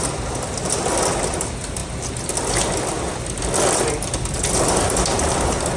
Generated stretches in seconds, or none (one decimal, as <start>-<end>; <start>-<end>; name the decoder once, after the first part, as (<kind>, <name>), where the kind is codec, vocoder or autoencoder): none